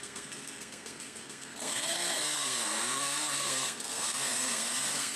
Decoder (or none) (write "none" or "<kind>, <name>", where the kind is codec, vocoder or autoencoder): codec, SNAC